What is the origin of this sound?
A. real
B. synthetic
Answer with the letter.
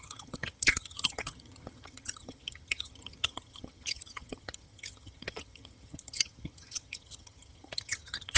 B